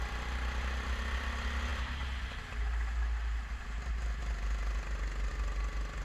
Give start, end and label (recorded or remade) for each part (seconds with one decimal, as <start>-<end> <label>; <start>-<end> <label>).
0.0-6.0 recorded